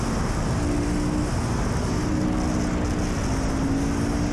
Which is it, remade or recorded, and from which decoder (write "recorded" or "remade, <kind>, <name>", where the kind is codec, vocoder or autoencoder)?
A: recorded